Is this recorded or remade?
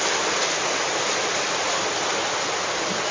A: recorded